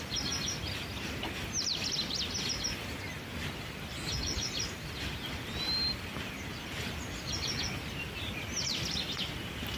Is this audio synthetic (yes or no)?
no